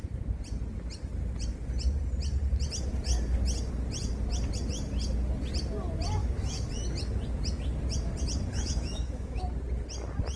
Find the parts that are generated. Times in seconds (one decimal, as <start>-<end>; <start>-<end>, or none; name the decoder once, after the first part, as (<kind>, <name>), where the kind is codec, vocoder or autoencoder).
6.2-6.7 (autoencoder, DAC-VAE); 8.5-9.4